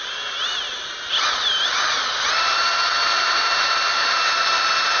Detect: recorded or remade remade